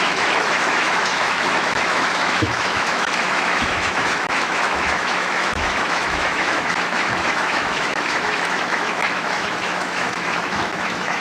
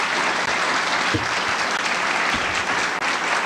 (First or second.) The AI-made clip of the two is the first